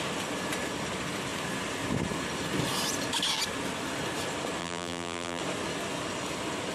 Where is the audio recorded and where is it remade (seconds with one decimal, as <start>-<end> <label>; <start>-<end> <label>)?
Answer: 0.0-4.6 recorded; 4.6-5.4 remade; 5.4-6.7 recorded